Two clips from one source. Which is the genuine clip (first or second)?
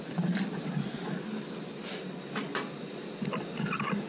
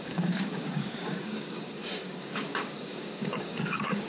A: first